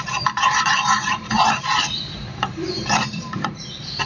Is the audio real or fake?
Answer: fake